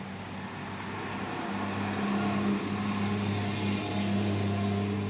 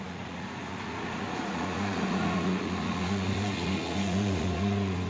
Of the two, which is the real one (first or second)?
first